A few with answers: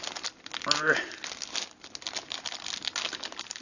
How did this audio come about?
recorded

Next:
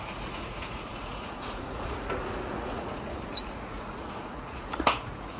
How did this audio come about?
remade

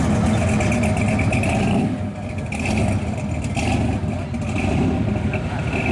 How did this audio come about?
recorded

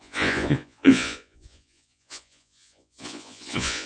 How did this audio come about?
remade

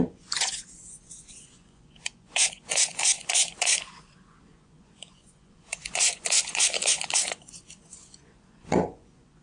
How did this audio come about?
remade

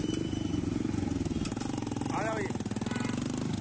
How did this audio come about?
recorded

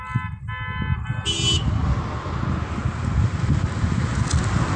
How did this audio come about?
recorded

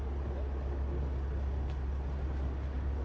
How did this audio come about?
recorded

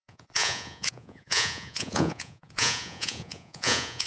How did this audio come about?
remade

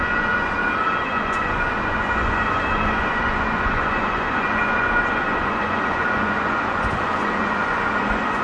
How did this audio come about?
remade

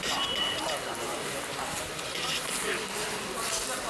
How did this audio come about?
recorded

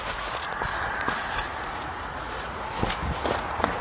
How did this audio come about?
remade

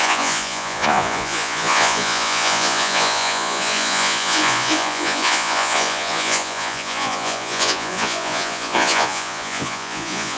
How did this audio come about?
remade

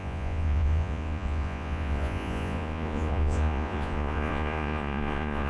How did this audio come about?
remade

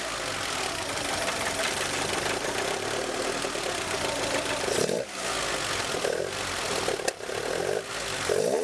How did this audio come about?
recorded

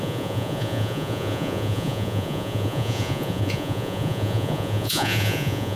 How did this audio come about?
remade